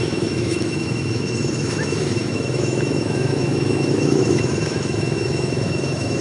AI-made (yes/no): yes